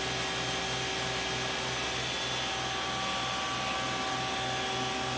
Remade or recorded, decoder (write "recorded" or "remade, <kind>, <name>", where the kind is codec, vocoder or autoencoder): recorded